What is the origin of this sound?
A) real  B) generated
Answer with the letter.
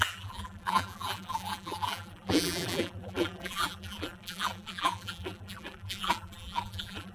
B